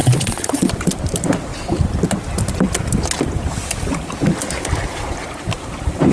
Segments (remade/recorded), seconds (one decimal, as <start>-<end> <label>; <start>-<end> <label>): 0.0-0.7 remade; 0.7-6.1 recorded